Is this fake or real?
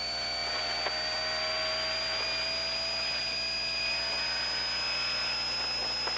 real